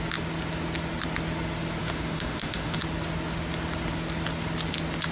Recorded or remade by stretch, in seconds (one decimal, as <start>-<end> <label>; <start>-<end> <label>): 0.0-1.8 recorded; 1.8-2.8 remade; 2.8-5.1 recorded